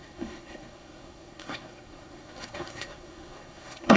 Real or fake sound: fake